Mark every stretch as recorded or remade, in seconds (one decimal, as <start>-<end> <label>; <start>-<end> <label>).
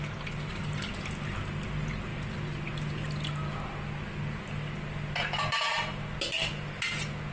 0.0-7.3 recorded